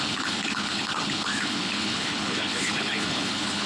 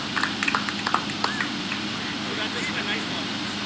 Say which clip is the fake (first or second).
first